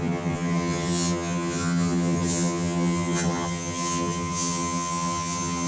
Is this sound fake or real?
fake